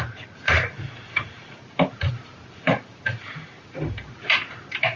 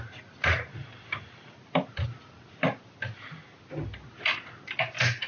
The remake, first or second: first